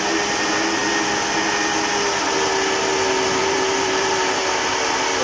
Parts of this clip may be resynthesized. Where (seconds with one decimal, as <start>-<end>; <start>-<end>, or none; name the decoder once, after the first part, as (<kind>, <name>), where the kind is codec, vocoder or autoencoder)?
3.4-4.4 (vocoder, BigVGAN v2)